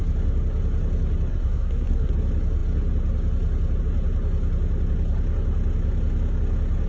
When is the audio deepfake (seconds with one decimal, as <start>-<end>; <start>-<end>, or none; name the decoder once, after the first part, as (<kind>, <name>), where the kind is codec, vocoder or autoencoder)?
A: 1.3-2.1 (codec, SNAC)